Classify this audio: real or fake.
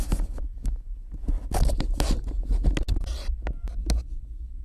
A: real